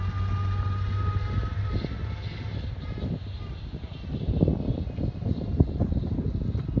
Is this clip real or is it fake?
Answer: real